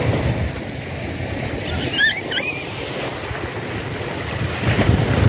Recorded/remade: remade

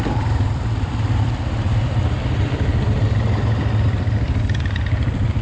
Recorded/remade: remade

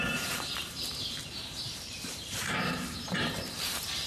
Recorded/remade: remade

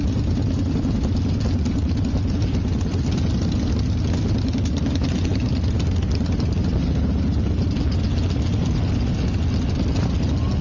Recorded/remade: recorded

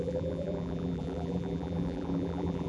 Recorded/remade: remade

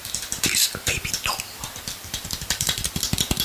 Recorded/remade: remade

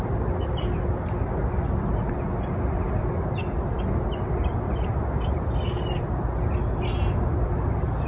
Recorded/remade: recorded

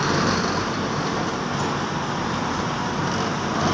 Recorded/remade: recorded